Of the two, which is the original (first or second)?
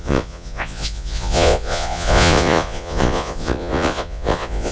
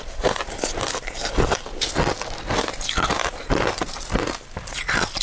second